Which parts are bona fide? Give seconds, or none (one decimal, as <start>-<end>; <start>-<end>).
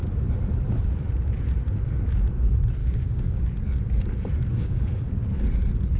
0.0-2.8; 3.4-4.5; 5.1-6.0